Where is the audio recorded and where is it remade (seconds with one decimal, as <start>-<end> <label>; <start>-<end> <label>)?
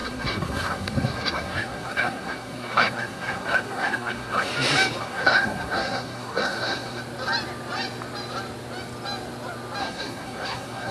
0.0-4.5 remade; 4.5-5.0 recorded; 5.0-7.0 remade; 7.0-9.8 recorded; 9.8-10.9 remade